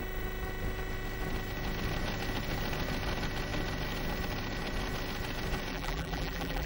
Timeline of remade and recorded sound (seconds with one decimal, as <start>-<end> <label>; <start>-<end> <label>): 0.0-5.7 recorded; 5.7-6.7 remade